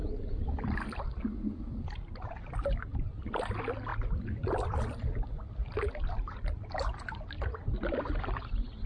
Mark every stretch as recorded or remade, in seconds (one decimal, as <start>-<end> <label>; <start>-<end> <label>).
0.0-8.9 recorded